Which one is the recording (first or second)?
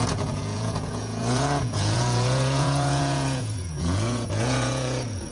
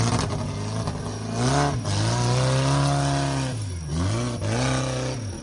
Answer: second